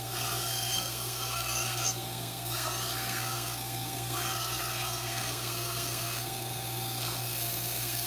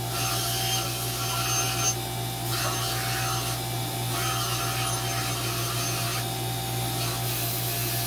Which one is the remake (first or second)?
first